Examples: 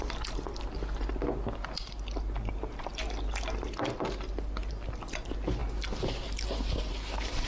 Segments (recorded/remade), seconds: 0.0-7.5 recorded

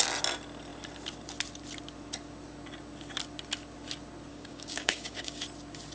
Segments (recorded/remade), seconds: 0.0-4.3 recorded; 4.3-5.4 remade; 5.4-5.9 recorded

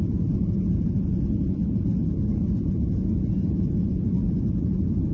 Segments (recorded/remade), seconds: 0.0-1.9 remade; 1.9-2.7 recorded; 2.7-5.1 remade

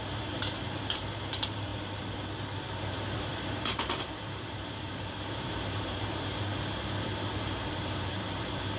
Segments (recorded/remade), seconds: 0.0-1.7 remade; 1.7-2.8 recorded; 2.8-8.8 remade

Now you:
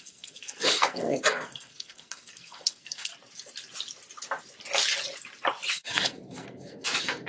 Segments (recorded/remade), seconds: 0.0-3.1 remade; 3.1-5.7 recorded; 5.7-7.3 remade